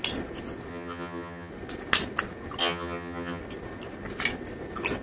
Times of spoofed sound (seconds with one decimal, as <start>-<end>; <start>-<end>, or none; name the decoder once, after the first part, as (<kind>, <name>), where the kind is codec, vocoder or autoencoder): 0.7-1.5 (vocoder, HiFi-GAN); 2.6-3.4